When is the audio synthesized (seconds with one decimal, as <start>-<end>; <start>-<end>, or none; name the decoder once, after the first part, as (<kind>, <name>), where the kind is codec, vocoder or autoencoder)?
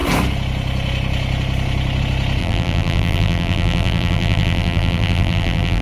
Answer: 2.4-5.8 (vocoder, BigVGAN v2)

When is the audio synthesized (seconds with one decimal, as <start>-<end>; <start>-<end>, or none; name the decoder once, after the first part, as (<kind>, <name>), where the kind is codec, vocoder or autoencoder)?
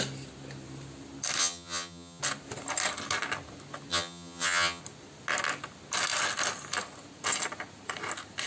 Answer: 1.4-2.2 (vocoder, HiFi-GAN); 3.9-4.8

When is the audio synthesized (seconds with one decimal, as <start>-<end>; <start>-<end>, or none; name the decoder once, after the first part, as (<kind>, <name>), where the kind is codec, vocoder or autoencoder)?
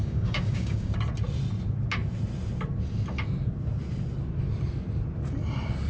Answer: 0.0-0.9 (codec, DAC)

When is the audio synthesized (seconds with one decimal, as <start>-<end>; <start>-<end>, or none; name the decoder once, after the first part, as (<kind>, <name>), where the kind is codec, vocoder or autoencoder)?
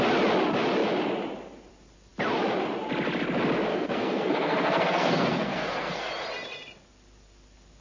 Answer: 3.7-6.1 (codec, SNAC)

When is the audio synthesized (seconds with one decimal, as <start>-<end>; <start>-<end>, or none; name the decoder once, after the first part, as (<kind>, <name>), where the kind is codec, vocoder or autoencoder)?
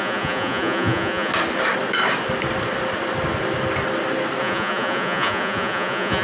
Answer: 0.0-1.3 (vocoder, Vocos); 4.4-6.2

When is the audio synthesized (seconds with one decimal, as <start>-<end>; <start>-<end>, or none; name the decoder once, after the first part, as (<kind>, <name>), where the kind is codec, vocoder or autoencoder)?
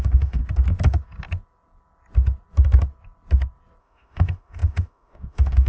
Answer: 0.0-0.4 (autoencoder, DAC-VAE); 3.8-5.7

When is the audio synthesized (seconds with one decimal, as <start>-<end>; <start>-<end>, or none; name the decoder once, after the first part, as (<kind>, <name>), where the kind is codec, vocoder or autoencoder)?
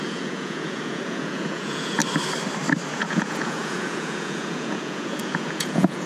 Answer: 0.0-2.0 (vocoder, Vocos); 2.9-6.1